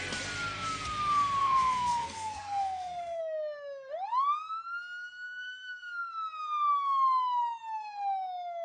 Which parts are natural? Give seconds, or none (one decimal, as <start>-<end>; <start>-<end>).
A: 0.0-1.4; 3.2-5.3; 6.1-8.6